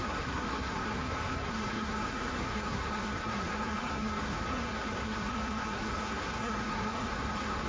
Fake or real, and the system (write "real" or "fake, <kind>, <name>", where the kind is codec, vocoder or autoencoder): fake, codec, SNAC